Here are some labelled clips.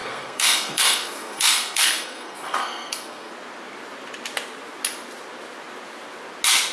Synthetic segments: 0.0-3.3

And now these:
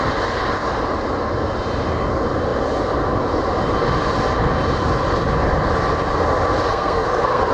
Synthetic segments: 6.7-7.5

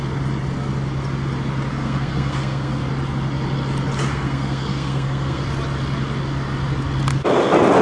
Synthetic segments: 1.7-2.9; 4.1-5.4

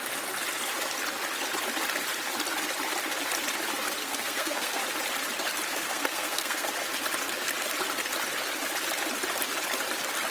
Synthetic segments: 4.0-4.8; 5.7-6.7

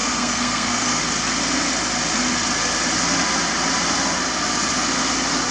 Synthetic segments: 0.0-1.0

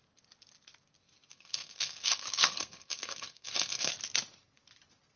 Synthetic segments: 1.3-3.9

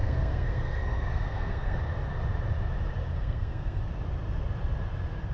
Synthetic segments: 0.0-1.8; 3.1-3.8

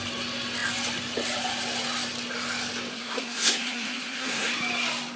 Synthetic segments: 2.9-4.5